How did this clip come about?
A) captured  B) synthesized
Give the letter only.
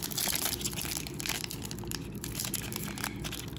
B